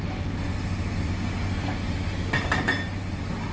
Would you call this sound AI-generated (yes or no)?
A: no